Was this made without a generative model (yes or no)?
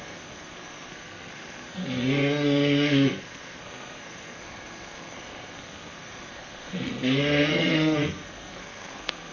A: no